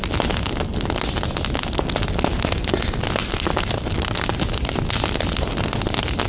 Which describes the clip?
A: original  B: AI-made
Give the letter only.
A